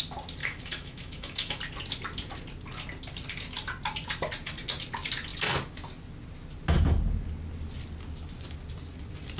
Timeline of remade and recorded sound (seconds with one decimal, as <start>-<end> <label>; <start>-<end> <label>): 0.0-0.4 recorded; 0.4-1.6 remade; 1.6-9.4 recorded